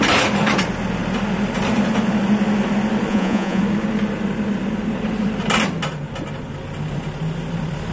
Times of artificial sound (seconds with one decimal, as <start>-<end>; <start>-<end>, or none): 3.1-3.6